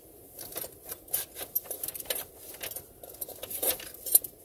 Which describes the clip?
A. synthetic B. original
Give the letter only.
B